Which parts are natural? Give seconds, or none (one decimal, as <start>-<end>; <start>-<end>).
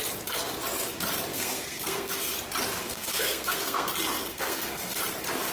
0.0-1.3; 2.1-2.8; 3.9-4.3; 5.0-5.5